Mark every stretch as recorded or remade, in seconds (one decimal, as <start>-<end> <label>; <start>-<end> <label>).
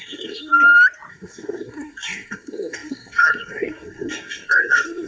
0.0-0.5 remade; 0.5-1.1 recorded; 1.1-5.1 remade